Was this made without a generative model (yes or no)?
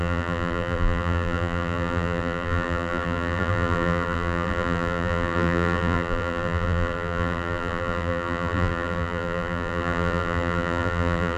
no